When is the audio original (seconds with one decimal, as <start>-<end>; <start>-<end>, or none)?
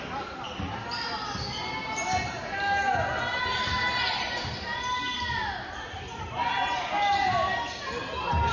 0.0-8.5